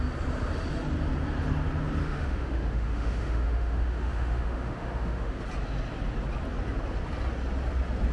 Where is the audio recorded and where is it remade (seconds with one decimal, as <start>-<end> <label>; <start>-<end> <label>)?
0.0-2.0 recorded; 2.0-5.4 remade; 5.4-8.1 recorded